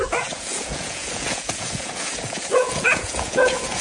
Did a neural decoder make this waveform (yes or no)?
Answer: yes